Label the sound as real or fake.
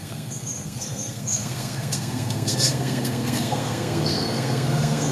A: fake